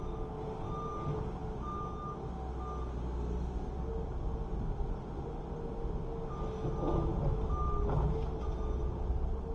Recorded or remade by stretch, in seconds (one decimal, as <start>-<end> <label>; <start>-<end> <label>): 0.0-9.5 recorded